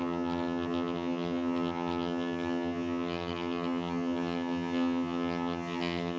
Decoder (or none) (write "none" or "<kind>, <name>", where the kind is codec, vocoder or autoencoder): vocoder, HiFi-GAN